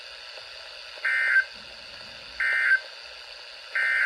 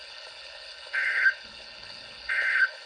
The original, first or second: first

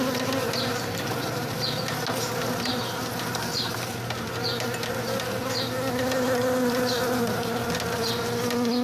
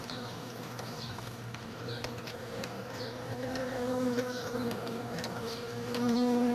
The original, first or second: first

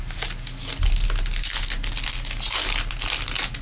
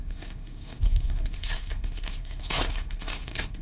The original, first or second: first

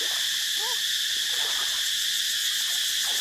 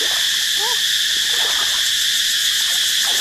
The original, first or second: second